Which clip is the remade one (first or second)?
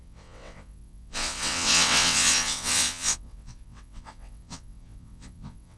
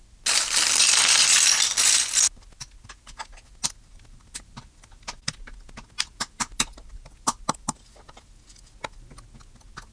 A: first